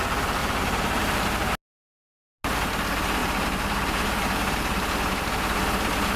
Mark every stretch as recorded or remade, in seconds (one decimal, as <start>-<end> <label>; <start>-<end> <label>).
0.0-0.4 recorded; 0.4-1.3 remade; 1.3-3.2 recorded; 3.2-5.2 remade; 5.2-6.2 recorded